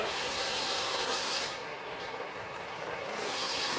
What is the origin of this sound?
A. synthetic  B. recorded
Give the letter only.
A